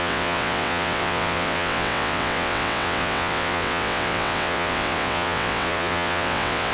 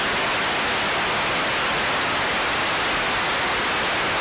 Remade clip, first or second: first